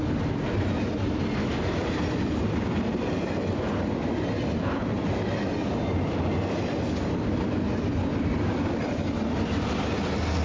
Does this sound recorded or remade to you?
recorded